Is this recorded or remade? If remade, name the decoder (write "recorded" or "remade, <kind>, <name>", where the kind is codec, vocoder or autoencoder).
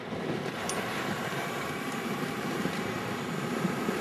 recorded